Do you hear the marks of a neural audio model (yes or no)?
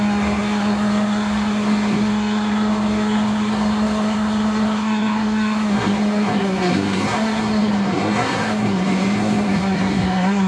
yes